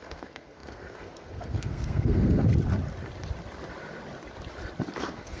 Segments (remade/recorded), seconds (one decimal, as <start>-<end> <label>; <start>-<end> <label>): 0.0-2.5 remade; 2.5-5.0 recorded; 5.0-5.4 remade